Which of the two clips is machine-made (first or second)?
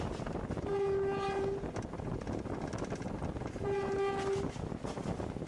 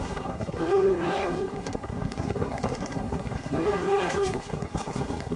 second